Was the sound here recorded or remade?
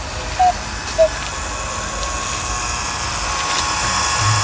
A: recorded